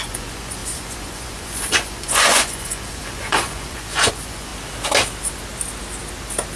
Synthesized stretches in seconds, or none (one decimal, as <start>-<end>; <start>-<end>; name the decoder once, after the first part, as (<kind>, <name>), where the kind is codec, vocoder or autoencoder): 0.0-4.5 (vocoder, Vocos)